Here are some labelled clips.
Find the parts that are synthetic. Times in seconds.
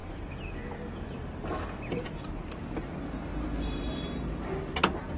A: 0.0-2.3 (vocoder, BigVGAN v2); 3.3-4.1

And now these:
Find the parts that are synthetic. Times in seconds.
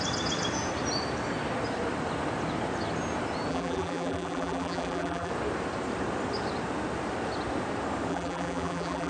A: 3.5-5.3 (vocoder, BigVGAN v2); 8.1-9.1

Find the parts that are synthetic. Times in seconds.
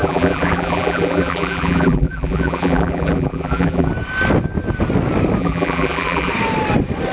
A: 0.0-3.9 (vocoder, BigVGAN v2); 5.4-6.3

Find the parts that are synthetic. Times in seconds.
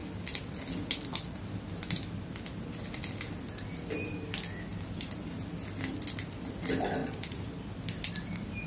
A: 4.7-5.4 (vocoder, BigVGAN v2); 7.0-7.7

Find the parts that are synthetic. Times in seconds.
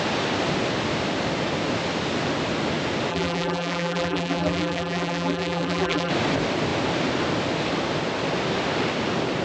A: 3.1-6.1 (vocoder, BigVGAN v2)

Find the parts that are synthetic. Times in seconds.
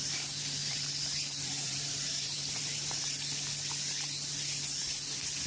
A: 0.6-3.1 (vocoder, BigVGAN v2)